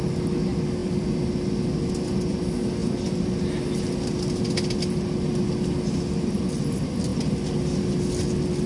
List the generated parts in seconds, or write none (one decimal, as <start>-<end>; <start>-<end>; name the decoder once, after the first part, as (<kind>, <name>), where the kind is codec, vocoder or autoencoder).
none